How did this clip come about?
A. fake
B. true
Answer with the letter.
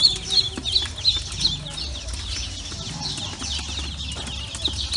B